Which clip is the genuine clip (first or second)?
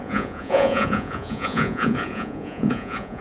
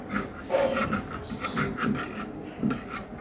second